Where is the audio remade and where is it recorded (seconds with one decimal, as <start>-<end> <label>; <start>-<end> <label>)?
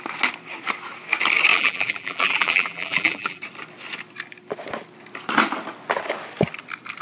0.0-1.5 recorded; 1.5-3.4 remade; 3.4-7.0 recorded